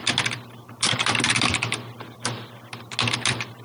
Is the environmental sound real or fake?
real